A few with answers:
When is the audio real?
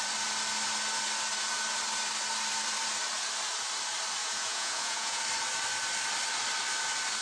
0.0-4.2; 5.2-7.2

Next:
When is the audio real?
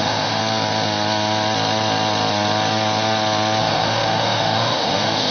0.4-3.6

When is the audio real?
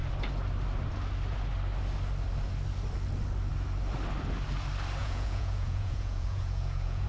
0.0-5.0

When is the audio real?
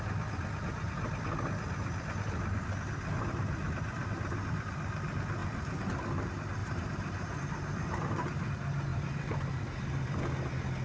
0.0-6.6; 8.5-8.9; 10.2-10.8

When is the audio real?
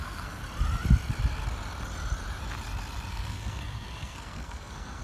0.4-3.1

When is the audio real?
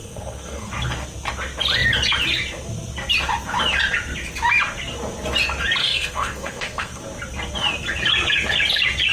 0.7-5.8; 7.0-9.1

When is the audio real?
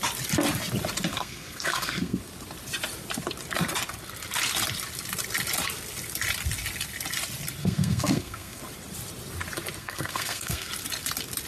0.0-1.1; 2.2-7.6; 8.6-9.8; 10.7-11.5